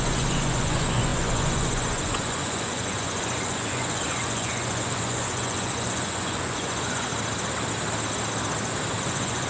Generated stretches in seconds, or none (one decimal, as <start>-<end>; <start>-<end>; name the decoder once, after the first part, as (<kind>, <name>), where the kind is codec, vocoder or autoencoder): 0.0-7.1 (vocoder, Vocos); 9.0-9.5